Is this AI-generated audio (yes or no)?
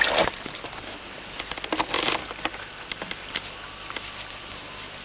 no